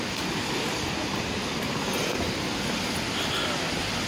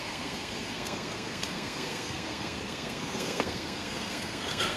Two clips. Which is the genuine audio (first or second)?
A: first